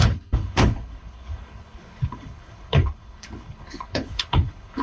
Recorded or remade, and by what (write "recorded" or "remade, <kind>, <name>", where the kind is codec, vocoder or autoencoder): remade, codec, HILCodec